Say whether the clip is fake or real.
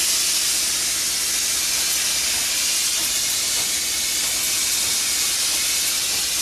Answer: real